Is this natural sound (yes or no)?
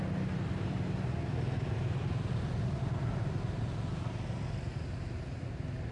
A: yes